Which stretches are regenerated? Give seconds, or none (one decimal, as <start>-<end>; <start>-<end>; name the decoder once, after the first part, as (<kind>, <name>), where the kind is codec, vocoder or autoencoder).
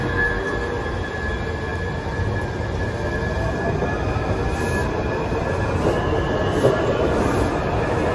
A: none